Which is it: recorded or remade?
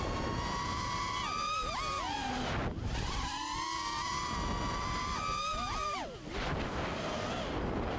recorded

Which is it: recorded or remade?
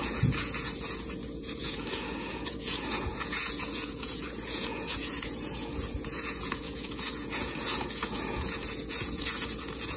remade